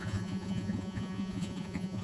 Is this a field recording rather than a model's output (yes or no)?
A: no